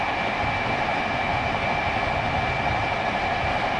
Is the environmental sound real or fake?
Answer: real